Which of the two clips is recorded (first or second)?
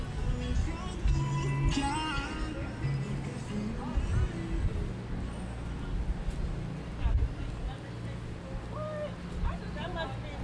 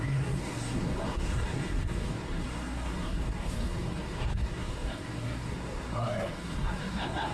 first